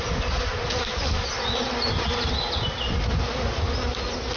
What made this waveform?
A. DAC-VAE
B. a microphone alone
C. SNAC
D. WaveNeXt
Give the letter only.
B